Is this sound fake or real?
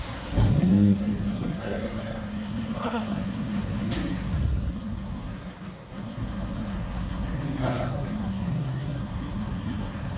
fake